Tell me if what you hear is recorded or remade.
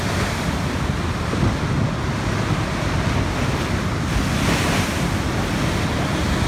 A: recorded